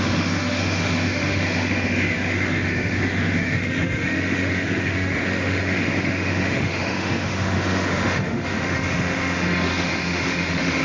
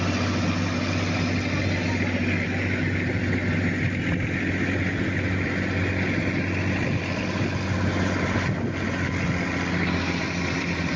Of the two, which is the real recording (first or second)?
second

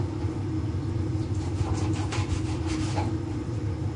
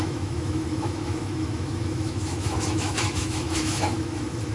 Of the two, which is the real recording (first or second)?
first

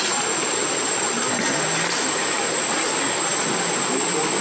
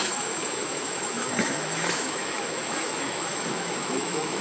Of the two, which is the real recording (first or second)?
first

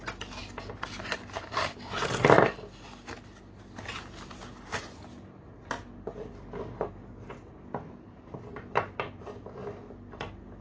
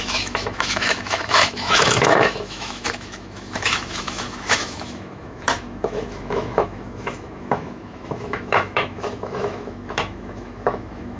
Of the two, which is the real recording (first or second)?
first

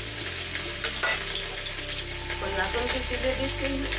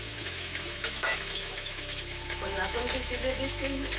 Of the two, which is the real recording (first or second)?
first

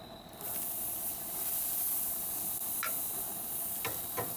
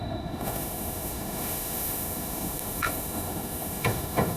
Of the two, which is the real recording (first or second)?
first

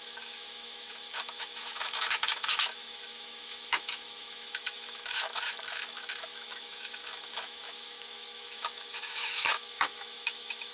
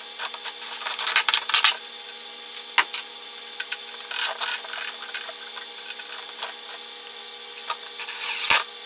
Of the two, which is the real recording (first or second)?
second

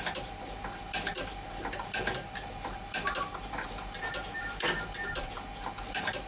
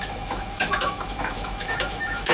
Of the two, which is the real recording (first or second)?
first